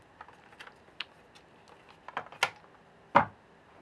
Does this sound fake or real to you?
real